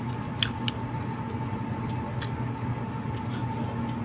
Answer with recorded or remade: recorded